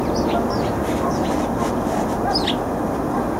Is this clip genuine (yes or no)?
yes